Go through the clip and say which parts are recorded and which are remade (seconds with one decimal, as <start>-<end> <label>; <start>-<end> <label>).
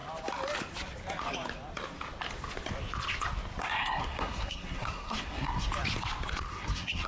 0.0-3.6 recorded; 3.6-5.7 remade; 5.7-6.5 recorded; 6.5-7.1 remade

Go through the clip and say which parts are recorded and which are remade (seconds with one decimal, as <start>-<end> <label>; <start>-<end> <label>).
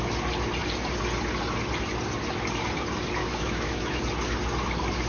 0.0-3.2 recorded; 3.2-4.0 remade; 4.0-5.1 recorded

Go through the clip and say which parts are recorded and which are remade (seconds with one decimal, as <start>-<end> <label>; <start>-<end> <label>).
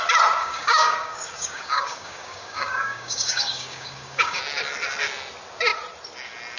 0.0-0.4 recorded; 0.4-4.4 remade; 4.4-6.6 recorded